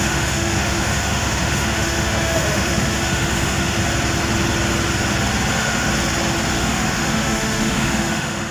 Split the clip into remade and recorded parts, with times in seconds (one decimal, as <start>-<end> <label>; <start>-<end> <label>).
0.0-3.8 remade; 3.8-5.5 recorded; 5.5-5.9 remade; 5.9-6.5 recorded; 6.5-8.5 remade